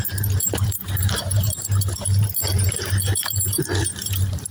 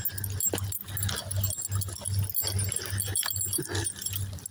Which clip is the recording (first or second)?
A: second